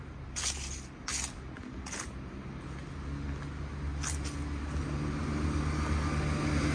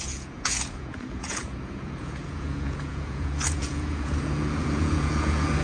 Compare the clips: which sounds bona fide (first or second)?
first